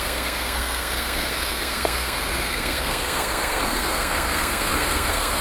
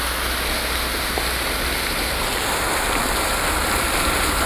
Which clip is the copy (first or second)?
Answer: first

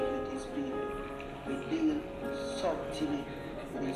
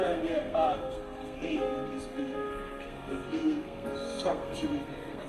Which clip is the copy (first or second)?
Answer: second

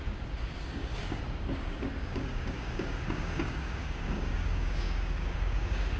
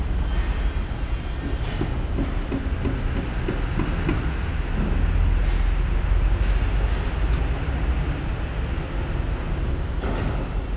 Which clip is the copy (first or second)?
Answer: first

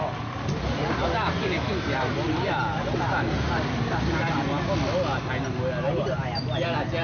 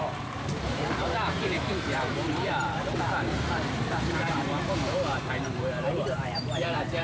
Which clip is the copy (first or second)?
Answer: second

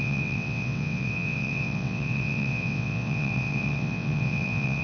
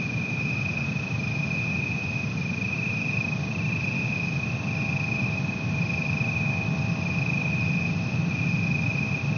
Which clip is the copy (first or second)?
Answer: first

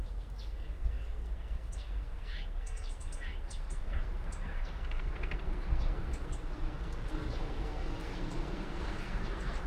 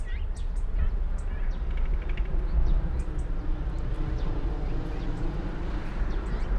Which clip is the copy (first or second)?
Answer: first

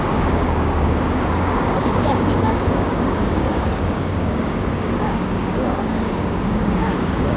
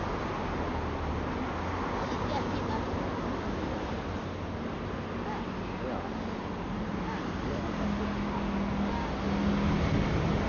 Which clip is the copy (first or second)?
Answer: first